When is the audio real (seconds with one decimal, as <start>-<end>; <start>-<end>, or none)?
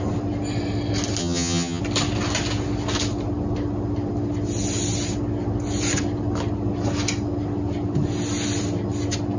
0.0-1.2; 1.8-9.4